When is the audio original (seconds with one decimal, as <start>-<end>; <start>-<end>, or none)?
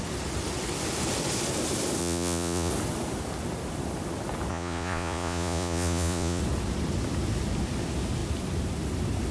0.0-2.0; 2.7-4.5; 6.4-9.3